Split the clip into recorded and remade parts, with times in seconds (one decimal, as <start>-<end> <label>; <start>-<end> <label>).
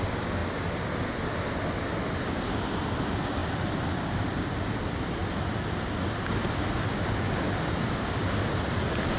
0.0-0.4 remade; 0.4-2.2 recorded; 2.2-3.4 remade; 3.4-4.3 recorded; 4.3-5.2 remade; 5.2-7.8 recorded; 7.8-9.2 remade